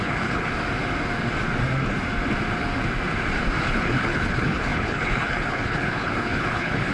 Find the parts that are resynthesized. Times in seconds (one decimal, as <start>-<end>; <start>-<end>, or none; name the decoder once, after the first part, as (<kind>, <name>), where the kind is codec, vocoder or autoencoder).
0.0-0.5 (codec, HILCodec); 3.6-6.9